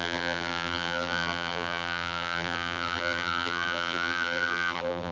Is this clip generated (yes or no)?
yes